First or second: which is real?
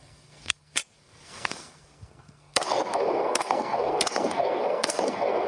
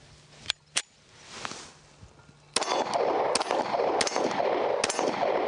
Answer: second